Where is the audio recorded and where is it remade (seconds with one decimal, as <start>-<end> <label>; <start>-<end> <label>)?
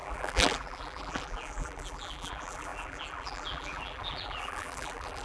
0.0-5.2 remade